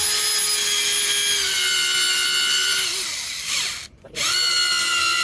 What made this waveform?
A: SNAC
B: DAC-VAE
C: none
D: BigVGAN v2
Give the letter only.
C